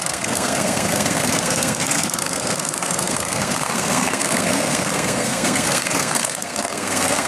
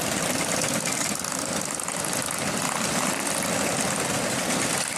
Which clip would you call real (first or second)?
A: second